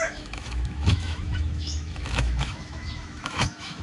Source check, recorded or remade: remade